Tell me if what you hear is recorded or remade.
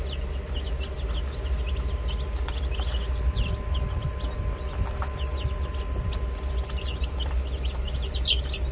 recorded